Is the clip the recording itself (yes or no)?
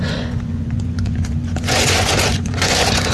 no